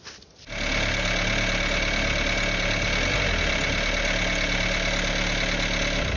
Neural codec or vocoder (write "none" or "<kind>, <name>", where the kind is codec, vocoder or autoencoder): none